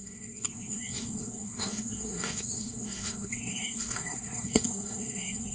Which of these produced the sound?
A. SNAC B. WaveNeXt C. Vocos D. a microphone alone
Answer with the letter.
A